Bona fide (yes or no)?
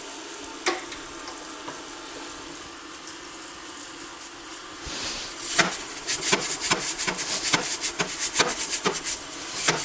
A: yes